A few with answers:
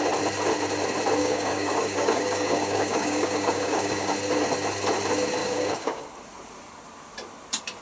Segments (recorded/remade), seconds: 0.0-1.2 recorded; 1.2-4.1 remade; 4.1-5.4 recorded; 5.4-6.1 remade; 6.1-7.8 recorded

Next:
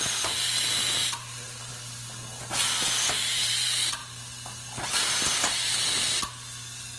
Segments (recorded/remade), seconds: 0.0-7.0 recorded